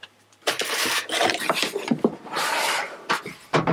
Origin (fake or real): fake